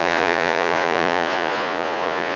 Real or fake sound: fake